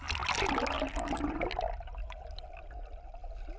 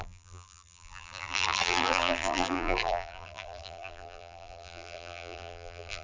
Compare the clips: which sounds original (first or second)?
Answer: first